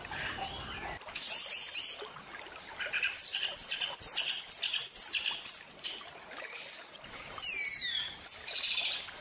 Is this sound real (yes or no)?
yes